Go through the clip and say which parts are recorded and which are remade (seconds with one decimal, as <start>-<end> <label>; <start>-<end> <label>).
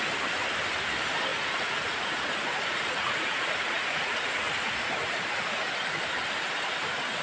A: 0.0-1.3 recorded; 1.3-5.6 remade; 5.6-7.2 recorded